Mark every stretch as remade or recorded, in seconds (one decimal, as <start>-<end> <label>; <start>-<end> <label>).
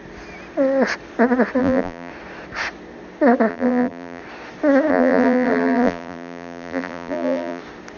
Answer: 0.0-1.6 recorded; 1.6-2.1 remade; 2.1-3.5 recorded; 3.5-4.2 remade; 4.2-4.9 recorded; 4.9-7.6 remade; 7.6-8.0 recorded